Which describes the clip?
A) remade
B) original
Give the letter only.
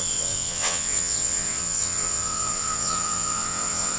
A